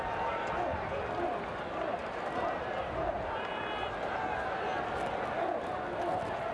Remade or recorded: recorded